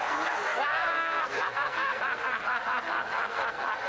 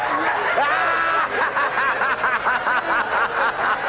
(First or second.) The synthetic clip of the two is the first